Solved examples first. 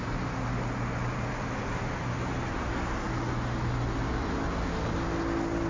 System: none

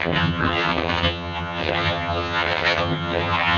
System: vocoder, HiFi-GAN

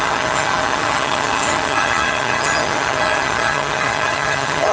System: vocoder, HiFi-GAN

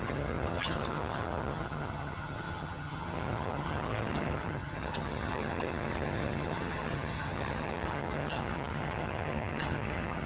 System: vocoder, HiFi-GAN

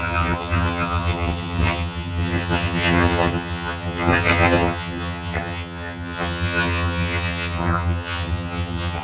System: vocoder, HiFi-GAN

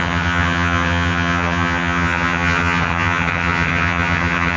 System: vocoder, HiFi-GAN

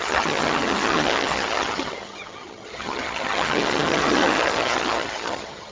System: vocoder, HiFi-GAN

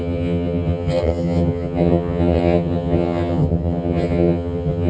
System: vocoder, HiFi-GAN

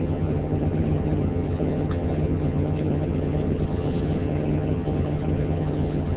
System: vocoder, HiFi-GAN